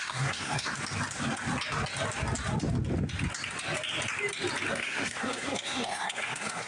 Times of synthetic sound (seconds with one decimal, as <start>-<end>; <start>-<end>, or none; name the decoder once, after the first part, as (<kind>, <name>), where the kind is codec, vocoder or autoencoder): 0.0-0.7 (codec, SNAC); 4.7-6.7

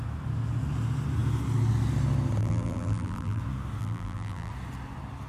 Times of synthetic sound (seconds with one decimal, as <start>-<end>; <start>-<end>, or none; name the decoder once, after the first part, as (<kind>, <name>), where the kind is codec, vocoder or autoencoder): 2.4-3.4 (vocoder, BigVGAN v2); 3.8-4.5

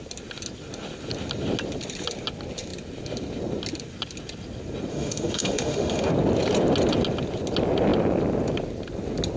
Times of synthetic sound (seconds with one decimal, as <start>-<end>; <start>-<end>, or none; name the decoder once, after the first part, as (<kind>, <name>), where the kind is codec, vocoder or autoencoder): 4.9-6.1 (autoencoder, DAC-VAE)

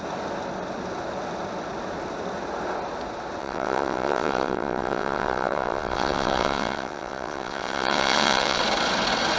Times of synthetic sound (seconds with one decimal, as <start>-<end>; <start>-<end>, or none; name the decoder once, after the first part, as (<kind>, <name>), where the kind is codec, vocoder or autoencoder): 3.4-8.6 (vocoder, WaveNeXt)

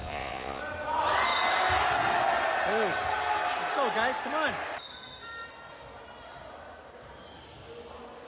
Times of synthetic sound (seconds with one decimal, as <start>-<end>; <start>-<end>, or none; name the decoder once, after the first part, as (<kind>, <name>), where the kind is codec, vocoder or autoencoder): 0.0-0.6 (vocoder, Vocos)

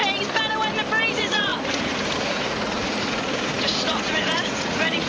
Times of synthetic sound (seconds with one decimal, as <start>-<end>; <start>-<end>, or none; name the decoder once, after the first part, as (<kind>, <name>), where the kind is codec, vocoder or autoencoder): 1.1-5.1 (vocoder, Vocos)

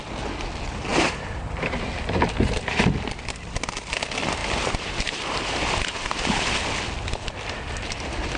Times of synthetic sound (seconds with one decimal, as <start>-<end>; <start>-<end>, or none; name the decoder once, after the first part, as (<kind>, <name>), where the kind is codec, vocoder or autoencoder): 0.9-1.9 (vocoder, BigVGAN v2); 4.4-6.4